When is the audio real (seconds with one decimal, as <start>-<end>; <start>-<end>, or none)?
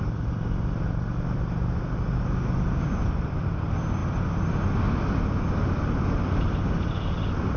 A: 0.0-7.6